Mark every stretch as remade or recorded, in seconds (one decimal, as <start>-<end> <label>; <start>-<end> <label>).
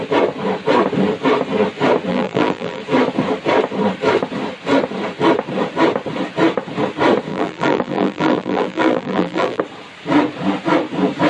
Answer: 0.0-2.1 recorded; 2.1-2.8 remade; 2.8-7.3 recorded; 7.3-9.6 remade; 9.6-11.3 recorded